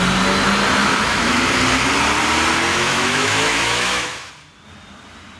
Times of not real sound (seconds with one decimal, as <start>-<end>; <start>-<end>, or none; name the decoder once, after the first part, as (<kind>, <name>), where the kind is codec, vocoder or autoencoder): 0.8-1.4 (autoencoder, DAC-VAE); 2.7-4.3